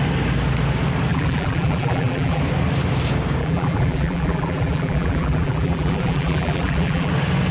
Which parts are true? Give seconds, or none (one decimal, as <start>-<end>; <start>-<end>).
0.0-1.1; 2.4-3.4; 7.1-7.5